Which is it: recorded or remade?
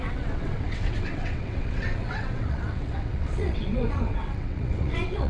remade